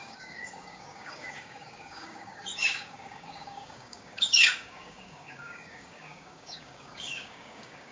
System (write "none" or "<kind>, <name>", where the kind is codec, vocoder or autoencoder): codec, DAC